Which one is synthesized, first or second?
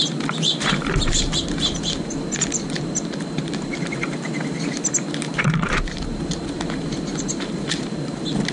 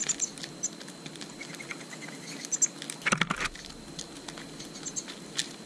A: first